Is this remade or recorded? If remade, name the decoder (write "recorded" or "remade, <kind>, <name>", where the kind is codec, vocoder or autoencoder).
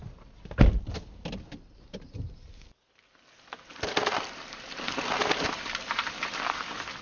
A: recorded